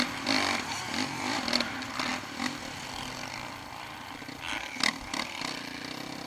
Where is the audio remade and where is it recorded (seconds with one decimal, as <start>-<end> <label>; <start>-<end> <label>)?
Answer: 0.0-6.3 recorded